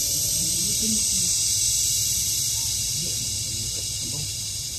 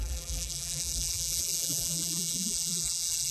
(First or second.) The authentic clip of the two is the first